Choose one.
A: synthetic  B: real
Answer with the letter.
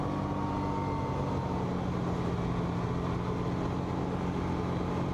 B